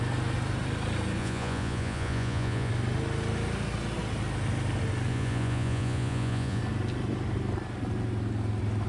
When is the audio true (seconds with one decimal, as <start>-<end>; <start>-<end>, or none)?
0.0-1.2; 2.7-5.1; 6.6-8.9